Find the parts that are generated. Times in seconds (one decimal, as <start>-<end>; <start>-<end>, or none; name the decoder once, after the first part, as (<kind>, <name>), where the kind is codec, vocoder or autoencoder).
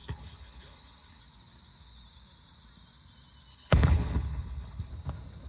0.0-1.2 (codec, HILCodec); 3.5-4.9